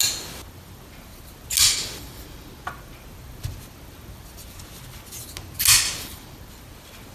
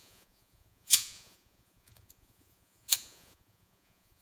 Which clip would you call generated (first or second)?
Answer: second